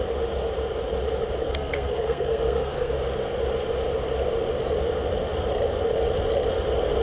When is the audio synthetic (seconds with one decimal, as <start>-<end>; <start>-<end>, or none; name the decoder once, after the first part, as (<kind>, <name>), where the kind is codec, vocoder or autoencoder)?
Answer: 1.4-2.9 (codec, SNAC)